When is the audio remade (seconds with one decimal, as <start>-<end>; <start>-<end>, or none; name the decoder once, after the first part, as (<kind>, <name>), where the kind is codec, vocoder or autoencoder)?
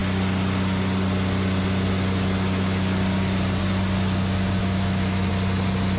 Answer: 4.6-5.3 (autoencoder, DAC-VAE)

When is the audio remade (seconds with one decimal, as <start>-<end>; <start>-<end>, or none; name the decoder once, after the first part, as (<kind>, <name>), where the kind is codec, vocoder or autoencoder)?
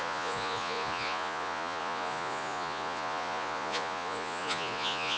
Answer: 0.0-5.2 (vocoder, Vocos)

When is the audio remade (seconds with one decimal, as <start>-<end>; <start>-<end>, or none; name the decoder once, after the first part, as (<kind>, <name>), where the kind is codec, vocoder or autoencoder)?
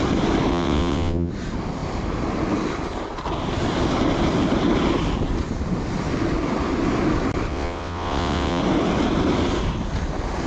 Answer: 0.5-1.3 (vocoder, WaveNeXt); 7.5-8.6